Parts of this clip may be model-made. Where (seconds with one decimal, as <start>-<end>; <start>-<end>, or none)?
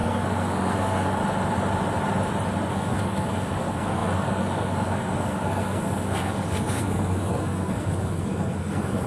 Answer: 0.0-1.2; 2.7-9.1